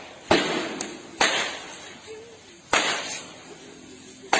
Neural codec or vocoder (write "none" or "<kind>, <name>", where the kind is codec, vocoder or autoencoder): none